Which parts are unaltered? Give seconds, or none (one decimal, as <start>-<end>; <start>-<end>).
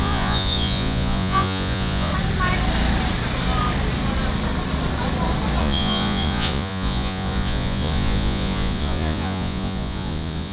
2.1-5.6